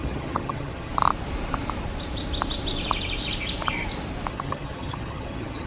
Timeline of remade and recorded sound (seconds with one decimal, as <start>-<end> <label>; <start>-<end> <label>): 0.0-0.9 remade; 0.9-4.3 recorded; 4.3-5.7 remade